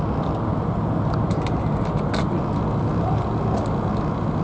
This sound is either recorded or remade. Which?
recorded